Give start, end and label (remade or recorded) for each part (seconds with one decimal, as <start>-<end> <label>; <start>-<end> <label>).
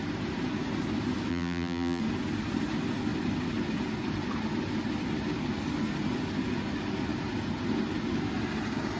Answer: 0.0-1.3 recorded; 1.3-2.0 remade; 2.0-9.0 recorded